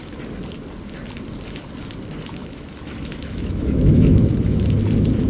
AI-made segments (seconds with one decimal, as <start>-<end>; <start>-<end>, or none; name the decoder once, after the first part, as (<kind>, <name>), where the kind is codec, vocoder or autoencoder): 2.4-4.6 (autoencoder, DAC-VAE)